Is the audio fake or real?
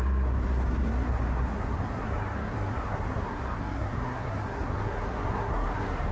fake